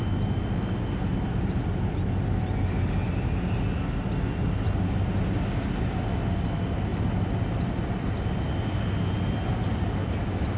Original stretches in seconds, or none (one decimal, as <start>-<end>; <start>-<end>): 0.0-10.6